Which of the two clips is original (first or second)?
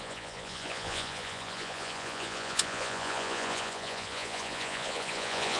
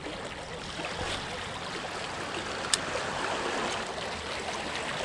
second